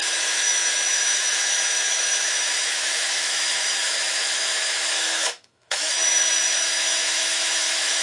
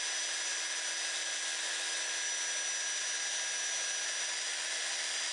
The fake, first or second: first